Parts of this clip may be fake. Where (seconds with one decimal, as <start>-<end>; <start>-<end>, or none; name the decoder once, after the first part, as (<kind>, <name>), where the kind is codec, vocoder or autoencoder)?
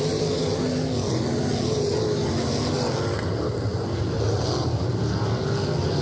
none